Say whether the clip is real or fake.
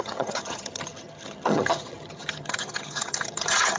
fake